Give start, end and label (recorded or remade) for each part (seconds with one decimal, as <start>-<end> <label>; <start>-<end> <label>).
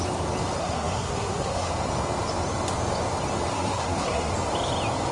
0.0-0.6 recorded; 0.6-1.7 remade; 1.7-3.5 recorded; 3.5-4.3 remade; 4.3-5.1 recorded